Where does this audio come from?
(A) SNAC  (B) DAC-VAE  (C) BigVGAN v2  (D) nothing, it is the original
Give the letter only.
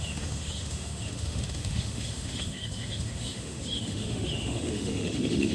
B